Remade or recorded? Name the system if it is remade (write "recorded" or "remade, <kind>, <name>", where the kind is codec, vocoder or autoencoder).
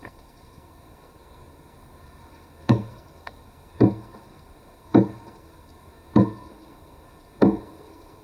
remade, codec, SNAC